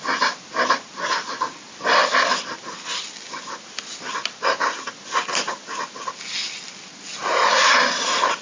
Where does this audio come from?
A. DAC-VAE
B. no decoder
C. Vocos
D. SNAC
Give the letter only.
B